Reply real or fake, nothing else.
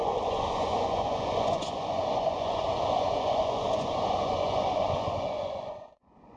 fake